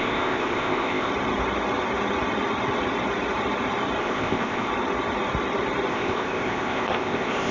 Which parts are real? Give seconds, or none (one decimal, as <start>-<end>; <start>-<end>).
1.1-4.0; 4.7-5.9